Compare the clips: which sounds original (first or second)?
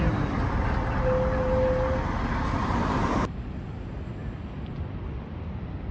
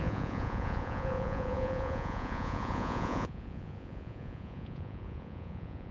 first